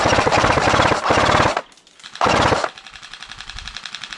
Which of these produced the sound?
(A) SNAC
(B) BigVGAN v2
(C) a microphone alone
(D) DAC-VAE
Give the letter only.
C